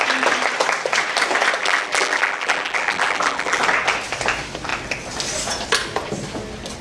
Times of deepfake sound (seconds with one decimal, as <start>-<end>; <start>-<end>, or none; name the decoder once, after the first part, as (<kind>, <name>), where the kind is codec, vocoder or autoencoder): 1.6-3.6 (vocoder, BigVGAN v2)